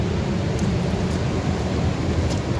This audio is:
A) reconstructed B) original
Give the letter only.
B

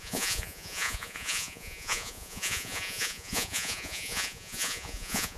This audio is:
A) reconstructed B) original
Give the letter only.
A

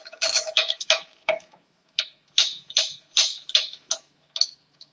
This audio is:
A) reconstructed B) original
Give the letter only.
A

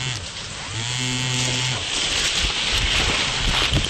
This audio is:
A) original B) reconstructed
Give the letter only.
A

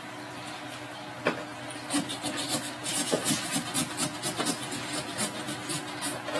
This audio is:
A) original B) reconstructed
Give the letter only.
A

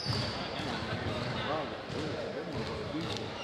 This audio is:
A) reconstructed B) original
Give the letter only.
A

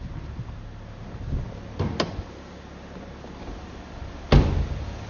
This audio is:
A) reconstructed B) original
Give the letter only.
B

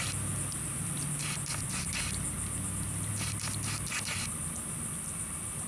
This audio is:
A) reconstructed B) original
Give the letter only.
B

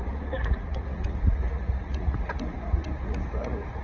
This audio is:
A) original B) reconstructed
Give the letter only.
B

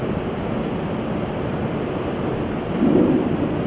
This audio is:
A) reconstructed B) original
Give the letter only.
B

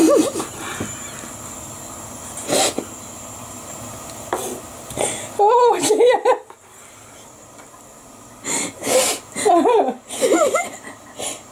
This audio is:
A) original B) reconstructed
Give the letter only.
A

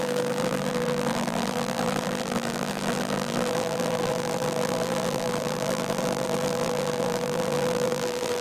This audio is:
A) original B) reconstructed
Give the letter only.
B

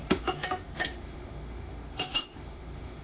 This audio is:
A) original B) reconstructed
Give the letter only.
B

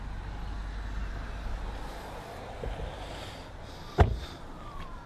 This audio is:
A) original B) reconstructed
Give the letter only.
A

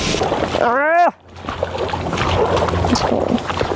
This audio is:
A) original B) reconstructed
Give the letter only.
A